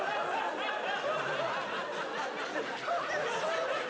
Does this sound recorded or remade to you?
recorded